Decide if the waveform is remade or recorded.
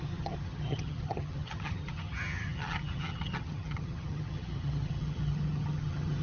remade